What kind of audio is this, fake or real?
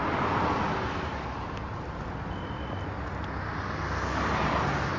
real